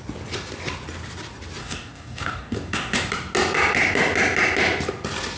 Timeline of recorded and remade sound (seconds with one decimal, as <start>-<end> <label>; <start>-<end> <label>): 0.0-1.6 recorded; 1.6-3.1 remade; 3.1-5.4 recorded

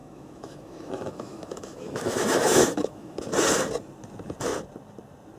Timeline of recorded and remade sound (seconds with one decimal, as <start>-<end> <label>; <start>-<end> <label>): 0.0-3.2 remade; 3.2-5.4 recorded

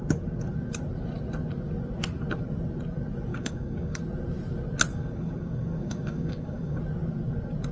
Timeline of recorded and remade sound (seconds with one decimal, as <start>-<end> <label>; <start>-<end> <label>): 0.0-3.3 recorded; 3.3-4.0 remade; 4.0-4.9 recorded; 4.9-6.8 remade; 6.8-7.7 recorded

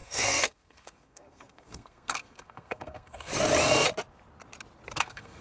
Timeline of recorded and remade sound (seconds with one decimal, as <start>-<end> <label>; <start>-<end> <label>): 0.0-3.3 remade; 3.3-5.0 recorded; 5.0-5.4 remade

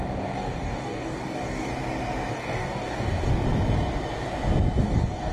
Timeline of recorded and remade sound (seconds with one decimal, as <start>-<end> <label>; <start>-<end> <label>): 0.0-1.7 remade; 1.7-2.3 recorded; 2.3-3.3 remade; 3.3-4.8 recorded; 4.8-5.3 remade

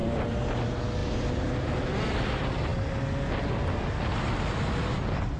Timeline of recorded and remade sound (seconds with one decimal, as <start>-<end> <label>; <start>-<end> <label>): 0.0-5.4 recorded

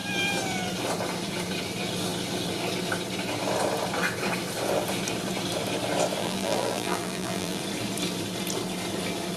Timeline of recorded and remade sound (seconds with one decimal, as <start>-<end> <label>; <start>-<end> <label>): 0.0-6.2 recorded; 6.2-7.6 remade; 7.6-9.4 recorded